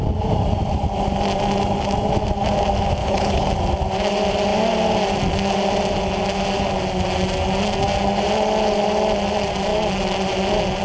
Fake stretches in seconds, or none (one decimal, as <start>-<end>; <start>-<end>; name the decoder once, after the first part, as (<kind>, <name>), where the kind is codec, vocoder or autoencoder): 3.0-3.5 (codec, HILCodec)